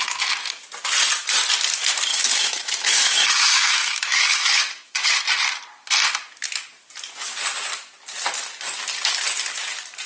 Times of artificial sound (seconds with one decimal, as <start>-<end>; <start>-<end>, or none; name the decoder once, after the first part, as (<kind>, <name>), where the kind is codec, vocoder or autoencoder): 2.1-5.2 (autoencoder, DAC-VAE)